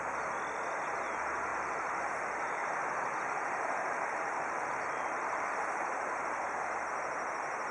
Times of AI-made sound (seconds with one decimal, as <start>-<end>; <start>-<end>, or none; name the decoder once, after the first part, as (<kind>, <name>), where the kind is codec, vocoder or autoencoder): 1.5-2.0 (vocoder, BigVGAN v2); 2.6-6.6